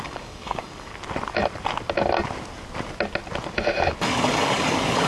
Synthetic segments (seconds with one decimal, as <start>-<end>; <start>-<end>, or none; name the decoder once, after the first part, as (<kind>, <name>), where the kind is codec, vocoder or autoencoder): 0.0-0.9 (codec, DAC); 4.0-5.1

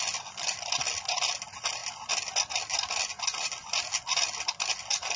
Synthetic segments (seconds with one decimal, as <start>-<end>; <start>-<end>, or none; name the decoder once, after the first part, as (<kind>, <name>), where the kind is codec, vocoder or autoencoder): none

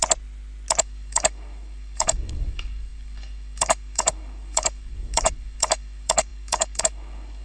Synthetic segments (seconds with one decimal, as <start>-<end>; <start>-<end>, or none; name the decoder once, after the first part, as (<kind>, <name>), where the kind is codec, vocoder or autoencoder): 0.8-7.4 (codec, DAC)

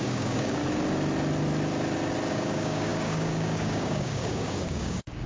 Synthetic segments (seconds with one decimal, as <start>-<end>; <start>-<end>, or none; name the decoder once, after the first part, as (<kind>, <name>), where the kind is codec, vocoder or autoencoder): 0.0-0.6 (codec, DAC); 2.3-5.3